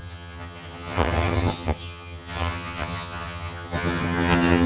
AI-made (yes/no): yes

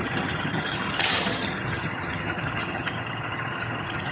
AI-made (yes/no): yes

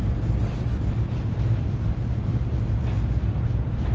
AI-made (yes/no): no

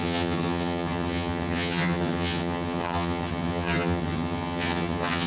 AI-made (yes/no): yes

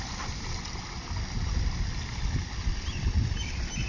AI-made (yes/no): no